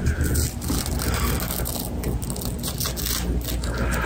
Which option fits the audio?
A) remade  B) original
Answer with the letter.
B